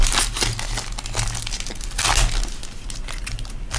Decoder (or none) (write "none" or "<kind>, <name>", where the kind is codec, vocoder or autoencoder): none